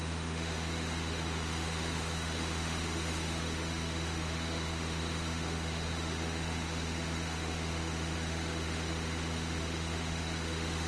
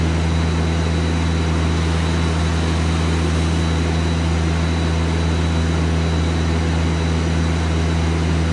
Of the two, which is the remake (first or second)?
first